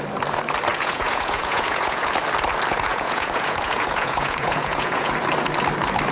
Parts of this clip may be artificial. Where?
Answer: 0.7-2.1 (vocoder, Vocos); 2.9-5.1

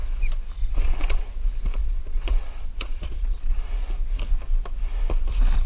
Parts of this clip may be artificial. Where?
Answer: 0.6-1.3 (vocoder, Vocos); 1.8-3.7

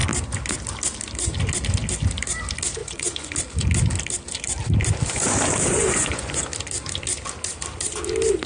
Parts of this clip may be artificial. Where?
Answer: 2.8-3.3 (vocoder, Vocos); 5.7-6.4

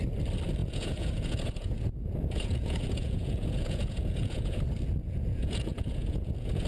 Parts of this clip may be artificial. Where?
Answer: 0.6-4.6 (vocoder, Vocos); 5.0-6.7

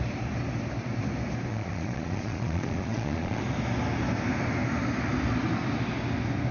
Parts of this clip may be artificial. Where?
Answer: 1.5-3.4 (vocoder, Vocos)

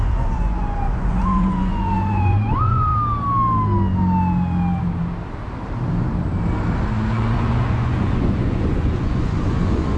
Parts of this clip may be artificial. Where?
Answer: 0.0-2.9 (vocoder, Vocos); 7.1-10.0